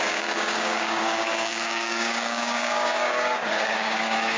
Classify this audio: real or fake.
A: fake